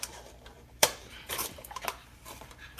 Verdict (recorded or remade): remade